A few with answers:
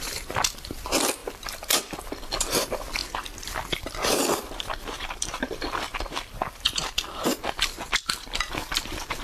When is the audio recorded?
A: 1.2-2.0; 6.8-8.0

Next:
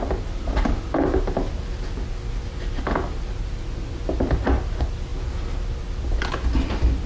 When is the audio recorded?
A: 0.0-7.1